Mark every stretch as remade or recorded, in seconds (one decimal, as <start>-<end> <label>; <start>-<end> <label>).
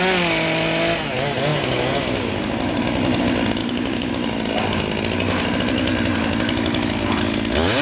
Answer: 0.0-3.6 recorded; 3.6-4.1 remade; 4.1-7.8 recorded